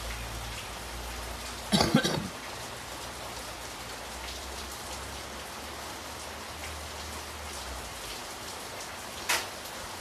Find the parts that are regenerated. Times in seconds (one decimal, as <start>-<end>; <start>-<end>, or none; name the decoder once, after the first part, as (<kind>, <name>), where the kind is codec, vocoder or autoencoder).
2.2-5.8 (vocoder, BigVGAN v2)